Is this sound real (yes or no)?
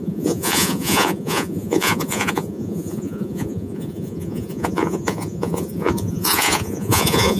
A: no